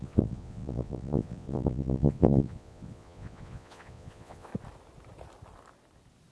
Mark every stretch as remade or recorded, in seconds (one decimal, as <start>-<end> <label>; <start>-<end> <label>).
0.0-4.5 remade; 4.5-6.3 recorded

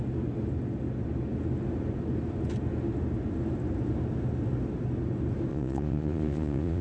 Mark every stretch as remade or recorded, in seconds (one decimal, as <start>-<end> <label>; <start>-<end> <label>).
0.0-5.5 recorded; 5.5-6.8 remade

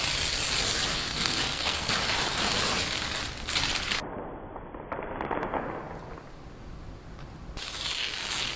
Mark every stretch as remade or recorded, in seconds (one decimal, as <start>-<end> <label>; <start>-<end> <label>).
0.0-0.9 recorded; 0.9-1.9 remade; 1.9-8.6 recorded

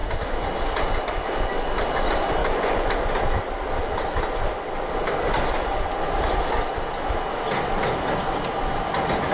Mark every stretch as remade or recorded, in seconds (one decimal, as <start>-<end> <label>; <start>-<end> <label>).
0.0-2.4 recorded; 2.4-2.9 remade; 2.9-9.3 recorded

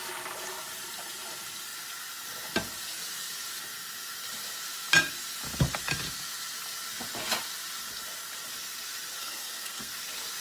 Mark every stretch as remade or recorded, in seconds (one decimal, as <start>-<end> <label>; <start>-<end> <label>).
0.0-9.2 recorded; 9.2-9.9 remade; 9.9-10.4 recorded

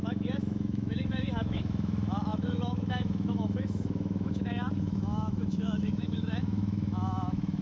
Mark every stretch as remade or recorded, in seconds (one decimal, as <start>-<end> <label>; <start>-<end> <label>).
0.0-7.6 remade

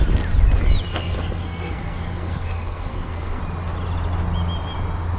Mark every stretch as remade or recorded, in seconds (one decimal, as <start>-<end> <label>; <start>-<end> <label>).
0.0-0.9 recorded; 0.9-3.4 remade; 3.4-5.2 recorded

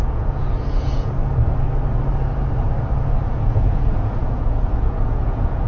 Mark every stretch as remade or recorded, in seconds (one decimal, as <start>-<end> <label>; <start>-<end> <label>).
0.0-1.2 remade; 1.2-3.3 recorded; 3.3-5.7 remade